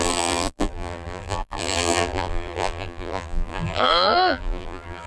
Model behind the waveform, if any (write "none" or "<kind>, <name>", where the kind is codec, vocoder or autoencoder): vocoder, BigVGAN v2